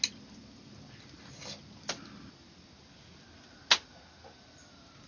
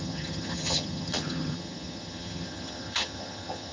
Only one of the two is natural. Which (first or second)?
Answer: first